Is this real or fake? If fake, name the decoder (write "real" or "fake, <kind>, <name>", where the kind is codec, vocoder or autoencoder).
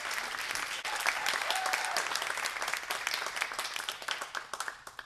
real